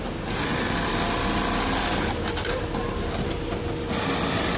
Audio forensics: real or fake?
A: real